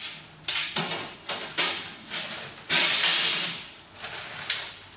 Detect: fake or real real